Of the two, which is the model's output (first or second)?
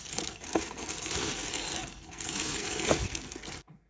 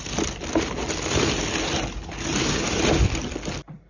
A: first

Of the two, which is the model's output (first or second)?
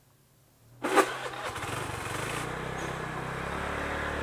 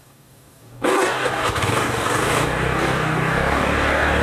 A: second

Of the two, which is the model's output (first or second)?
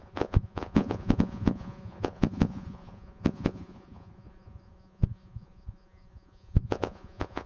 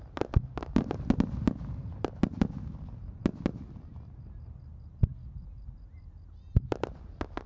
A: first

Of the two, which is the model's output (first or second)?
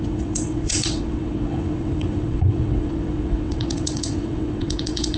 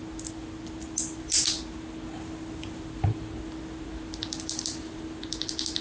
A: first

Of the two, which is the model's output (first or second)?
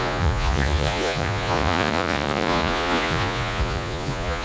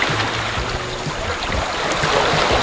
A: first